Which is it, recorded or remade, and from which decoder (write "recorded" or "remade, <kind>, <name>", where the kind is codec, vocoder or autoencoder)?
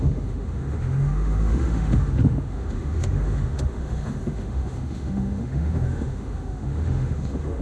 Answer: remade, autoencoder, DAC-VAE